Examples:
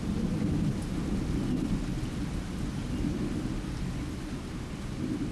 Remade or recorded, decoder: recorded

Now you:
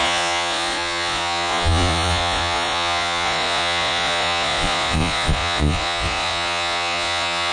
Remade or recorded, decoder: remade, vocoder, Vocos